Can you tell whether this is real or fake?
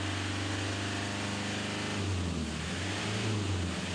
real